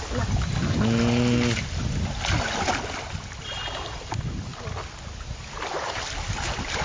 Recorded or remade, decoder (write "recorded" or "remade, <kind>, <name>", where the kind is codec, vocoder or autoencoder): recorded